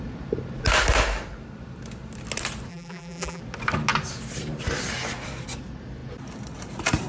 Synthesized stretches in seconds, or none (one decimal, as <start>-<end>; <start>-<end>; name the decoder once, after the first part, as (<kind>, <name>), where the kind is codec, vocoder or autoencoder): 2.7-3.4 (vocoder, BigVGAN v2)